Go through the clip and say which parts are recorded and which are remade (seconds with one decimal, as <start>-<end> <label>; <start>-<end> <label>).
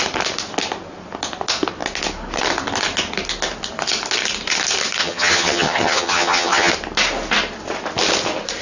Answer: 0.0-5.0 recorded; 5.0-6.7 remade; 6.7-8.6 recorded